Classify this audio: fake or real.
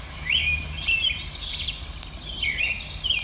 real